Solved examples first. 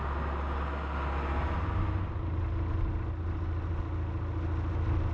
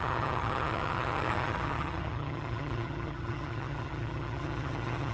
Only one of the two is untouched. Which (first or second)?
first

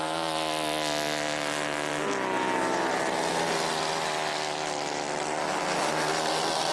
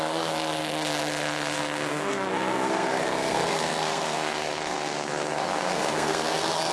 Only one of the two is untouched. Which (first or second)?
first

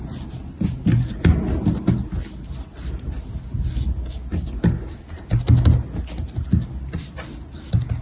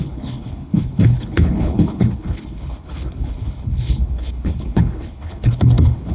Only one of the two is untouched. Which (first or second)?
first